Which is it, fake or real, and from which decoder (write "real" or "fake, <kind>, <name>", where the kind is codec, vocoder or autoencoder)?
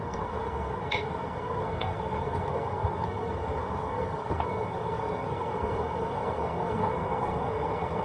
fake, codec, SNAC